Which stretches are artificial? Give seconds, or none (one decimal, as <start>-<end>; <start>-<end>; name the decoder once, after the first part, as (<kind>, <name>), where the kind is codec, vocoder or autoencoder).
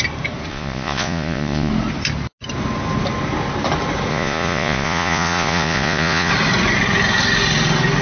0.5-1.7 (vocoder, Vocos); 4.1-6.3